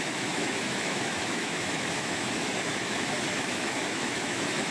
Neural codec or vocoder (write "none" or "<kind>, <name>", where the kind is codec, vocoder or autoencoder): autoencoder, DAC-VAE